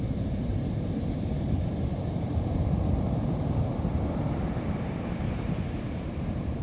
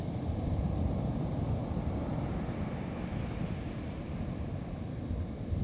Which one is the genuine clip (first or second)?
second